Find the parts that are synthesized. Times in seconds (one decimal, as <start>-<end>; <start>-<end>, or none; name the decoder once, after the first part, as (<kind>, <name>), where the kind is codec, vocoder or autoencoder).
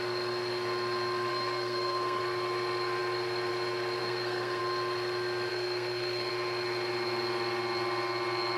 1.3-2.2 (codec, SNAC); 4.0-4.6; 5.5-6.3